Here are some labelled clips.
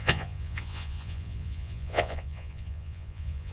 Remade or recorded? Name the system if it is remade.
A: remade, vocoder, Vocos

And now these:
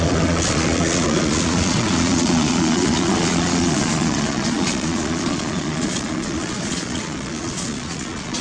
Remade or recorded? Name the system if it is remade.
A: remade, vocoder, Vocos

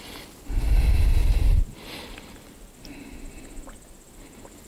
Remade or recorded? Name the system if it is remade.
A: recorded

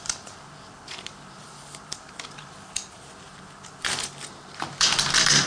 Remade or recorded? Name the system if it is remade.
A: remade, vocoder, BigVGAN v2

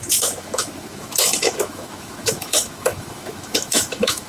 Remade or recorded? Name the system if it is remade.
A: remade, autoencoder, DAC-VAE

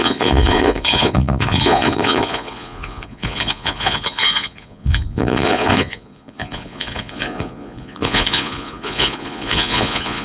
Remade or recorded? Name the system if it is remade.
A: remade, vocoder, Vocos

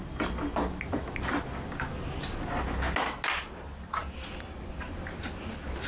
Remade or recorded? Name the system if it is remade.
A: recorded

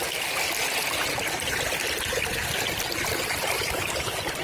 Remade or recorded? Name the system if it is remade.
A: recorded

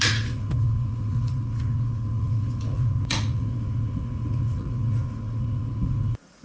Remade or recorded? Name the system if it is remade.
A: remade, vocoder, Vocos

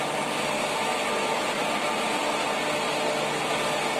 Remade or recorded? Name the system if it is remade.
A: recorded